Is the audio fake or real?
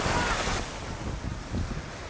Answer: real